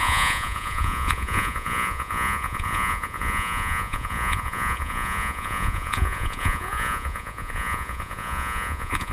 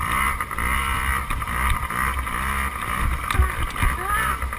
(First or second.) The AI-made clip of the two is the first